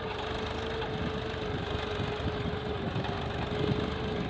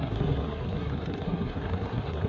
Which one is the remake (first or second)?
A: second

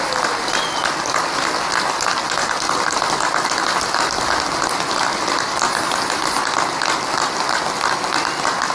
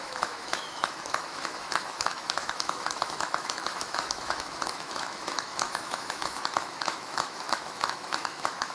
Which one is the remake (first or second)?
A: second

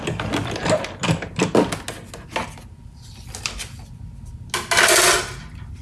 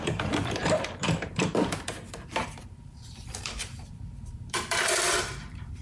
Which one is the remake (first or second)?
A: second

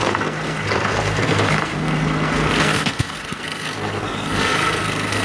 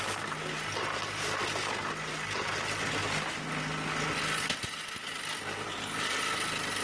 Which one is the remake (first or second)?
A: first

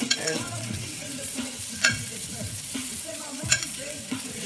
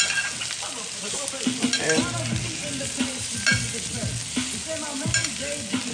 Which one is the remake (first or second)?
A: first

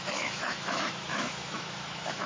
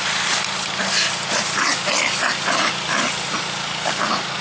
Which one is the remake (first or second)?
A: first